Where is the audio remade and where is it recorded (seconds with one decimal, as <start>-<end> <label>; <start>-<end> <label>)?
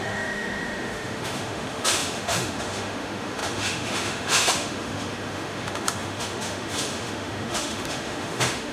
0.0-8.7 remade